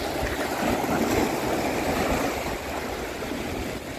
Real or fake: real